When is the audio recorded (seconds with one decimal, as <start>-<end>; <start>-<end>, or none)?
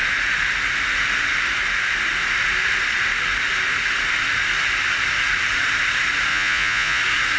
0.0-6.3; 7.0-7.4